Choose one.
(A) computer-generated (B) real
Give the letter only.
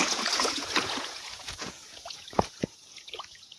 A